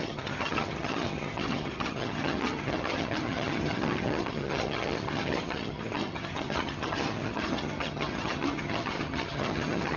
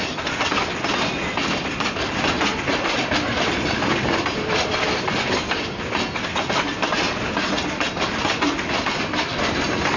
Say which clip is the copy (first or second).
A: first